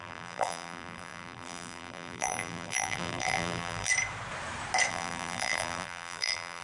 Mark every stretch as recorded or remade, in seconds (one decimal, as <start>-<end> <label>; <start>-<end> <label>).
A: 0.0-3.9 remade; 3.9-4.9 recorded; 4.9-6.6 remade